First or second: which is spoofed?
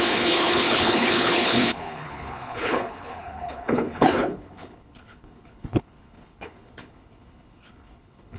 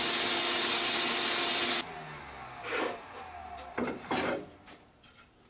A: first